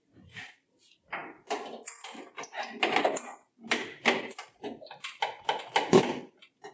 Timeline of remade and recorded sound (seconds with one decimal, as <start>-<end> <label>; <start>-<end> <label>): 0.0-6.7 recorded